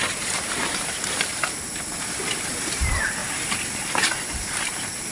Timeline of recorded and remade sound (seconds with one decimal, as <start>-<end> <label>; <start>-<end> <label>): 0.0-5.1 remade